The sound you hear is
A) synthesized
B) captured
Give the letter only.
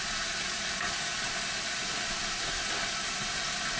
B